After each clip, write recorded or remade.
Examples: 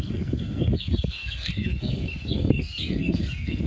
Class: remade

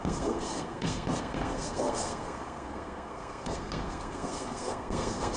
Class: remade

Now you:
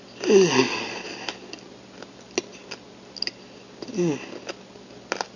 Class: recorded